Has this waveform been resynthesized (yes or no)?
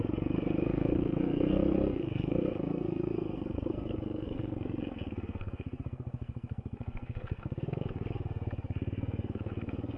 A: yes